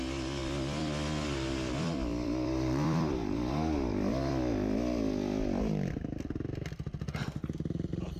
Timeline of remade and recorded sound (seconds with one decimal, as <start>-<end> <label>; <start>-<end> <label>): 0.0-0.4 recorded; 0.4-4.3 remade; 4.3-8.2 recorded